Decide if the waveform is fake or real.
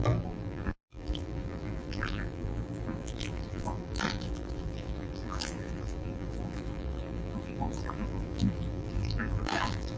fake